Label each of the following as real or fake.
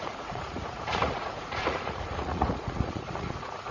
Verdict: fake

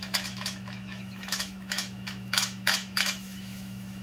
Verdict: fake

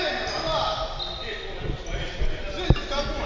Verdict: real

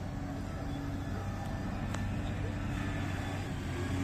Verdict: real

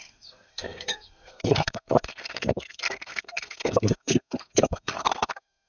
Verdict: fake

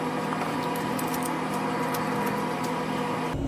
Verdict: real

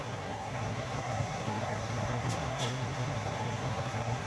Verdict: fake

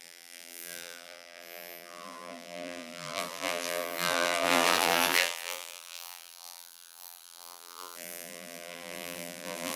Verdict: fake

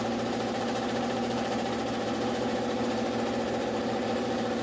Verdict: fake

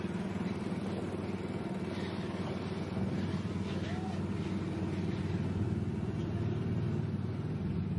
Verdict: real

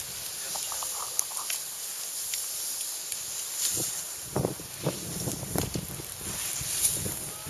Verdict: fake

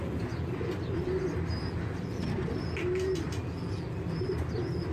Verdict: real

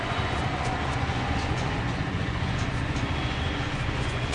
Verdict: fake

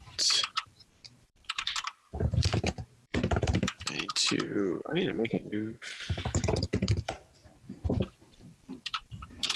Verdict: fake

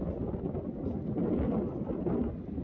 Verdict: real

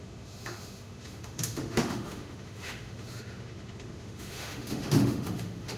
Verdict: fake